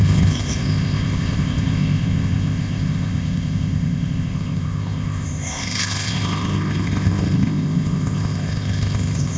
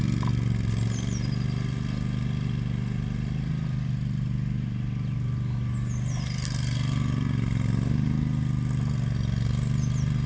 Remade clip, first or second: first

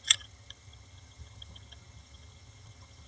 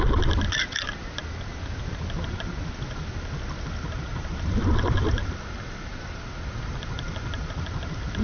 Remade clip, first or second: first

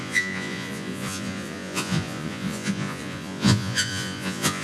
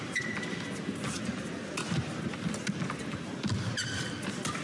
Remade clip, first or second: first